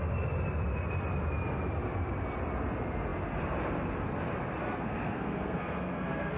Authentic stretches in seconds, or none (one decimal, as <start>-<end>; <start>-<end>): 0.0-4.6